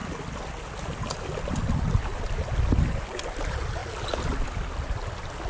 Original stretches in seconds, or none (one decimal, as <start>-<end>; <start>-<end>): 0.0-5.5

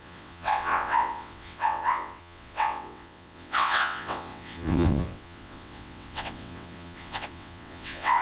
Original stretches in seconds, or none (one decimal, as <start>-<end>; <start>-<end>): none

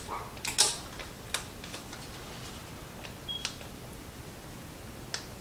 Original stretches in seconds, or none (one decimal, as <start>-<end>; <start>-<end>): 0.0-5.4

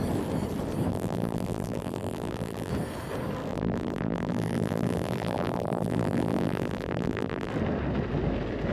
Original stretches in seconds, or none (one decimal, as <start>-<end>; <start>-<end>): 0.0-0.9; 2.7-3.5; 7.5-8.7

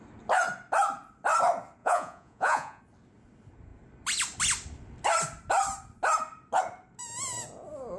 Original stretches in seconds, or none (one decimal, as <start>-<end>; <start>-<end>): 0.0-1.8; 2.8-8.0

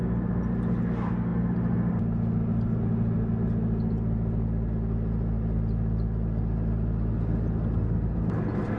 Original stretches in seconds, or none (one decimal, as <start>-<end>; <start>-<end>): 0.0-8.8

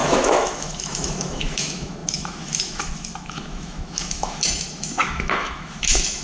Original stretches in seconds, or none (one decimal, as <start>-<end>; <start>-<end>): none

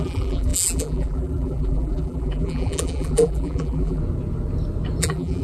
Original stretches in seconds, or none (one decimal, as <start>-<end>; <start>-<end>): 4.0-5.0